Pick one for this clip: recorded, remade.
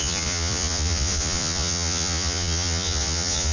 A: remade